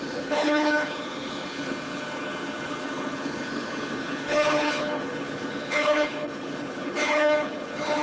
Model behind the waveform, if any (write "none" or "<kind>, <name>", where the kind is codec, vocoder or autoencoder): codec, HILCodec